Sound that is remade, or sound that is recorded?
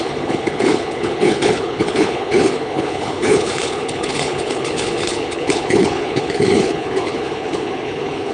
remade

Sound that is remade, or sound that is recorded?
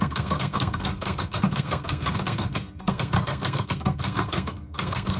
remade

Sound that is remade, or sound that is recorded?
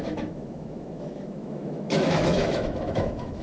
remade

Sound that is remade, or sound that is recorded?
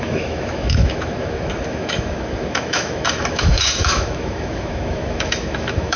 remade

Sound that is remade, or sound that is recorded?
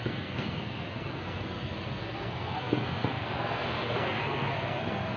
remade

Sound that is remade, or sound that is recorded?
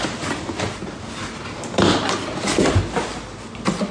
recorded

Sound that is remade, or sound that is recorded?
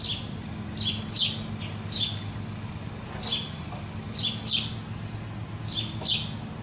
recorded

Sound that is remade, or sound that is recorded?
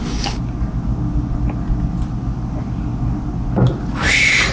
recorded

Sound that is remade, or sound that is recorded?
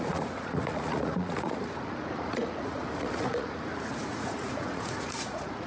remade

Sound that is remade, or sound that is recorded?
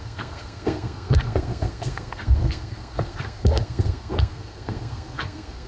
remade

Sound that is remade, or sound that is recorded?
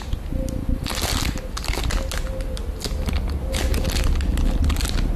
recorded